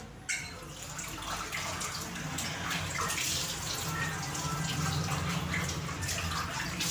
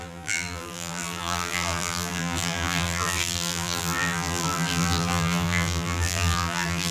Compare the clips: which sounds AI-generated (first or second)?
second